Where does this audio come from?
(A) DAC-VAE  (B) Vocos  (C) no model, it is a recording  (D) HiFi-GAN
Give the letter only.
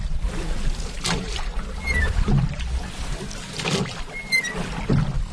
C